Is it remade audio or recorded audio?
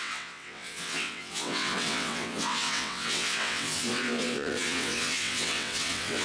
remade